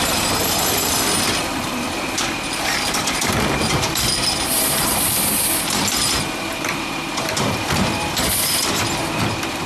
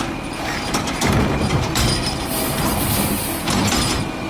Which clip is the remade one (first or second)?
first